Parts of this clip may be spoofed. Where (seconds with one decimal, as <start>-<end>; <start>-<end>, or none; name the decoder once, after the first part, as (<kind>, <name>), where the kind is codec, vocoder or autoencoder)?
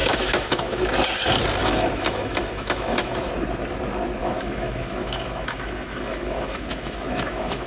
0.0-0.8 (autoencoder, DAC-VAE); 1.6-3.3; 4.2-7.7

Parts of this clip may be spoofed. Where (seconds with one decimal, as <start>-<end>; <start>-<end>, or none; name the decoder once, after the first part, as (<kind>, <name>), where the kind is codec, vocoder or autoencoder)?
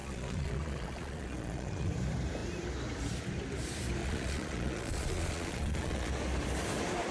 0.0-1.9 (vocoder, Vocos); 4.0-6.1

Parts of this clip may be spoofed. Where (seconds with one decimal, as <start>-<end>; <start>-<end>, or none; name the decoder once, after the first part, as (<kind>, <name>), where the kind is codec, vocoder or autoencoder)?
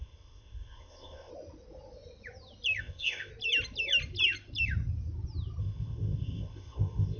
0.0-1.3 (codec, ZipCodec); 2.8-3.3; 5.6-7.2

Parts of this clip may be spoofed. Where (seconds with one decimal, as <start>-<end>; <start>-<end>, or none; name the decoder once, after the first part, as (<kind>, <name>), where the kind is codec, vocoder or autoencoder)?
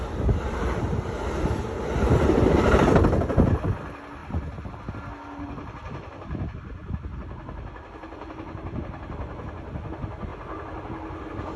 none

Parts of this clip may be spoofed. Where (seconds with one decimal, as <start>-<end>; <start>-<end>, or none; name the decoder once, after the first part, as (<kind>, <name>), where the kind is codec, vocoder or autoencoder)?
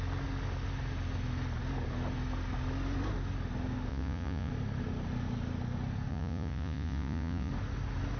3.9-4.5 (vocoder, Vocos); 6.1-7.5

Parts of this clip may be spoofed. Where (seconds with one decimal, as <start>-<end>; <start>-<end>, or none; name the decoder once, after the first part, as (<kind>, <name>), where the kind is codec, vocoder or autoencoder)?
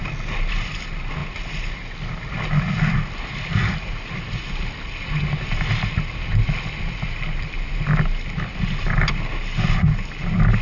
none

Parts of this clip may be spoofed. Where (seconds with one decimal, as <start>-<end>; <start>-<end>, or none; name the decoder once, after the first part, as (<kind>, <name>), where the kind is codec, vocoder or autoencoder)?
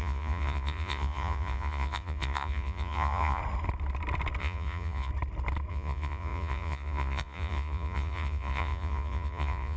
0.0-3.4 (vocoder, Vocos); 4.4-5.1; 5.7-9.8